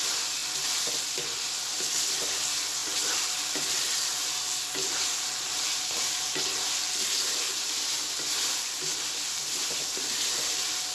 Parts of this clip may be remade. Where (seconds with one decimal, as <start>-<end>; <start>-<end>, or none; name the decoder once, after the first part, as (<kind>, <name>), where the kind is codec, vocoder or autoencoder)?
2.8-6.8 (vocoder, BigVGAN v2)